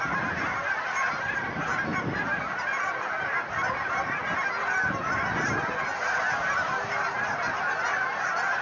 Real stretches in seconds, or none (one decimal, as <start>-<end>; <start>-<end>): 0.0-8.6